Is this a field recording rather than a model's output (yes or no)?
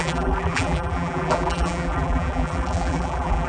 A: no